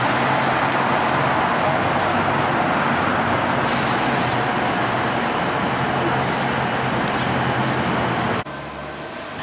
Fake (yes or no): no